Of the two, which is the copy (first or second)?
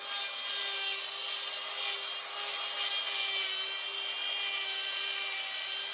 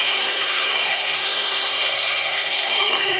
second